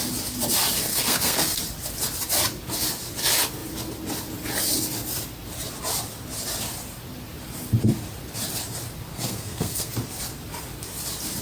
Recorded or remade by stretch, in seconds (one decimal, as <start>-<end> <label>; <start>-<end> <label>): 0.0-0.9 recorded; 0.9-1.6 remade; 1.6-9.1 recorded; 9.1-9.9 remade; 9.9-11.4 recorded